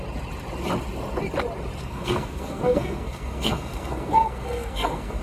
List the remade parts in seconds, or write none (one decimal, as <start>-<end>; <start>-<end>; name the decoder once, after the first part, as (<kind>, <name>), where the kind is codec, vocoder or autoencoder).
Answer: 1.8-5.2 (codec, SNAC)